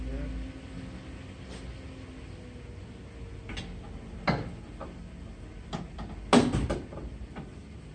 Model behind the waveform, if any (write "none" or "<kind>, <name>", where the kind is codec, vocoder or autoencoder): none